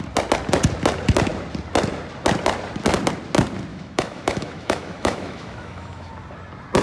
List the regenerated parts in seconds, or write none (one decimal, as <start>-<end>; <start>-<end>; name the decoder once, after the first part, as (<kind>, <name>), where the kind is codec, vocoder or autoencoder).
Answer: 3.7-6.1 (autoencoder, DAC-VAE)